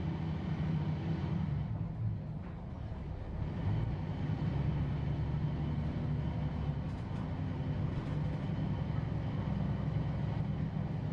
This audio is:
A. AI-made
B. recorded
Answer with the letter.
B